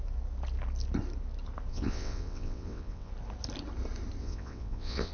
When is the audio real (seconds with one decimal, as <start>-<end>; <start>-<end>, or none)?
0.0-1.7; 3.1-4.2